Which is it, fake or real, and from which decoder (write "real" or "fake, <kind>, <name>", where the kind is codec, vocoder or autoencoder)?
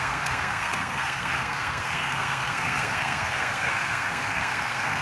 fake, codec, SNAC